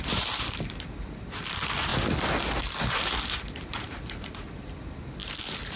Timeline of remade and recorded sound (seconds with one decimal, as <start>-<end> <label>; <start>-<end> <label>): 0.0-5.8 recorded